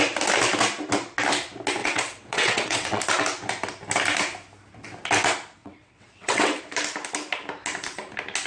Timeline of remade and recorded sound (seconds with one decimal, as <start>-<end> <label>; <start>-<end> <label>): 0.0-1.8 recorded; 1.8-3.0 remade; 3.0-5.6 recorded; 5.6-6.6 remade; 6.6-8.5 recorded

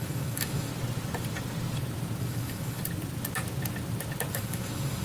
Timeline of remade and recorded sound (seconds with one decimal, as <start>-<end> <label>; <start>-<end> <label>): 0.0-0.7 remade; 0.7-2.2 recorded; 2.2-2.8 remade; 2.8-4.3 recorded; 4.3-5.0 remade

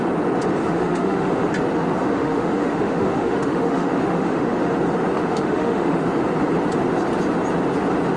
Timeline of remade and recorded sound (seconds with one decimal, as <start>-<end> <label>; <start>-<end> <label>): 0.0-0.6 recorded; 0.6-1.5 remade; 1.5-2.0 recorded; 2.0-4.7 remade; 4.7-5.2 recorded; 5.2-6.1 remade; 6.1-8.2 recorded

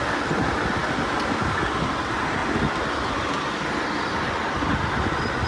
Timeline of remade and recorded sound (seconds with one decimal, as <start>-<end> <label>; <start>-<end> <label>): 0.0-5.5 recorded

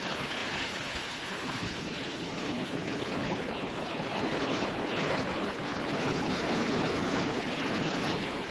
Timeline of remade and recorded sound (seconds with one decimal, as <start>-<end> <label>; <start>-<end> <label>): 0.0-8.5 remade

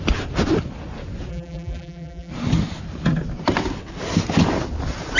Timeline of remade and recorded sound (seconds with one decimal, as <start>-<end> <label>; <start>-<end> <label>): 0.0-1.3 recorded; 1.3-2.3 remade; 2.3-5.2 recorded

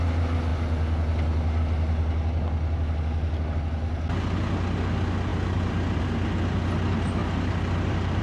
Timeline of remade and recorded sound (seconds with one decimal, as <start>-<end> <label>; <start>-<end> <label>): 0.0-8.2 recorded

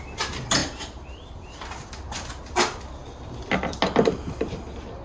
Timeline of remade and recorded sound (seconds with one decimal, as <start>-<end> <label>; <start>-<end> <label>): 0.0-0.6 recorded; 0.6-1.9 remade; 1.9-5.0 recorded